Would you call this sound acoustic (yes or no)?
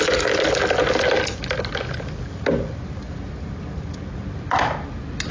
yes